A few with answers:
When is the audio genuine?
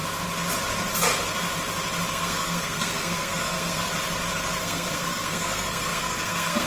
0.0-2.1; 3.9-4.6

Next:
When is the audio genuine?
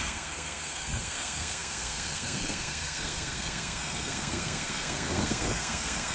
none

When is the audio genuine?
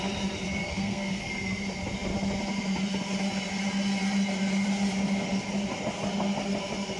0.0-0.7; 1.3-7.0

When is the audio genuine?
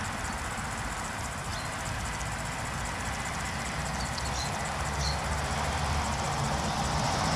0.0-7.4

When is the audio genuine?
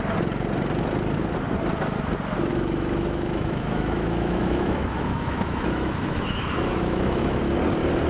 0.0-2.5; 7.4-8.1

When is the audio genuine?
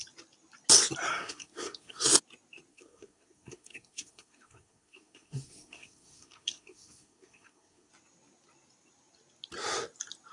0.0-1.1; 2.0-2.7; 7.9-10.3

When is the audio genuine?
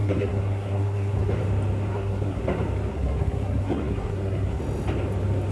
1.4-1.9; 2.4-2.9; 4.6-5.5